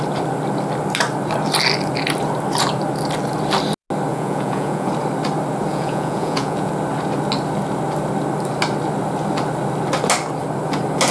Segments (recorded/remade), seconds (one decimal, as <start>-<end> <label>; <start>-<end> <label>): 0.0-4.1 recorded; 4.1-4.9 remade; 4.9-5.7 recorded; 5.7-6.7 remade; 6.7-11.1 recorded